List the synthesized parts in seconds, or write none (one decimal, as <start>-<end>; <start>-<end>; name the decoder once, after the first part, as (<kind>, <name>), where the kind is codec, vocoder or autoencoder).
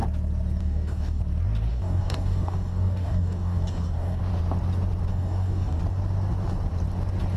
0.6-1.2 (codec, DAC); 1.7-4.2; 5.1-5.8